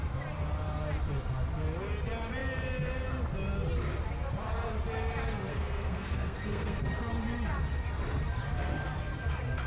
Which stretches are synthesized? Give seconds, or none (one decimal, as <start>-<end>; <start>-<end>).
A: 5.5-6.8